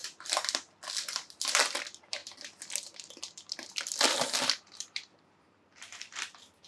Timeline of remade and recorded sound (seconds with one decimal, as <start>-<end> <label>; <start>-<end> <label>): 0.0-6.7 remade